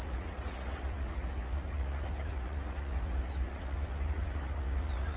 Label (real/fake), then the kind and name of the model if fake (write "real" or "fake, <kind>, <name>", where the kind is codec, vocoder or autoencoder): fake, vocoder, Vocos